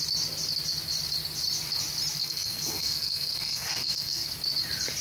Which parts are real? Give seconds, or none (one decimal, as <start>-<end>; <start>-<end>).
0.0-2.2; 4.3-5.0